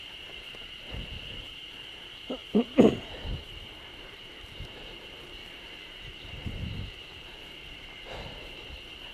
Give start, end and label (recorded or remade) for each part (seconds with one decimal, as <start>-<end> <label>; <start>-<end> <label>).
0.0-9.1 remade